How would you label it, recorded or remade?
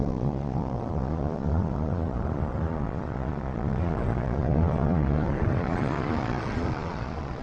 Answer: remade